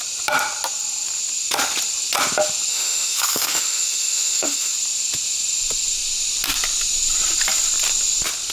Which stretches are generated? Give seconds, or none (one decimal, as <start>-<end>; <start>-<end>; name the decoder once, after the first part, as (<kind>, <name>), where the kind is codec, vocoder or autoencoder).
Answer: 2.7-4.7 (autoencoder, DAC-VAE)